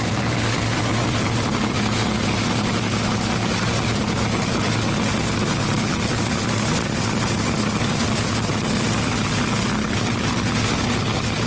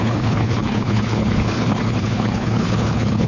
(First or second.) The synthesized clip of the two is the second